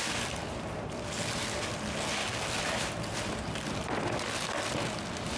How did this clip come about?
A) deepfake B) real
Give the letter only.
B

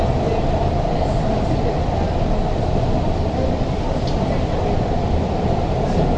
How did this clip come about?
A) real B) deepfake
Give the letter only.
A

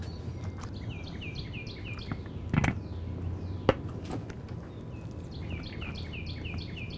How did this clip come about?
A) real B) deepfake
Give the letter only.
A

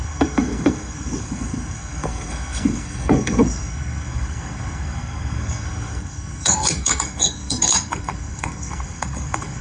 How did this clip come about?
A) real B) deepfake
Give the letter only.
B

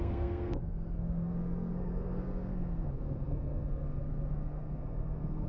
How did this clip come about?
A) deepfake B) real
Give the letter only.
A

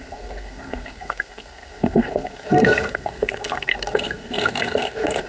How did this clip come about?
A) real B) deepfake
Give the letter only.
B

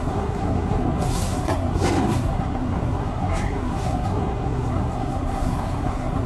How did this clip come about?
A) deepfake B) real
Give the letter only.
A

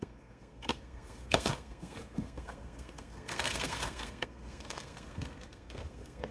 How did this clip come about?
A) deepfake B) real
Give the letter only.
A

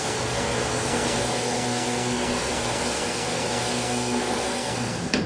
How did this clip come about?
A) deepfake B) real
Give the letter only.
A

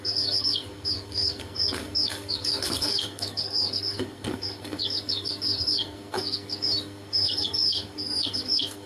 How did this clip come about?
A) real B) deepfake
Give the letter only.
B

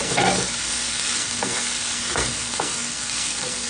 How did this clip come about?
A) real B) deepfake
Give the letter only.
B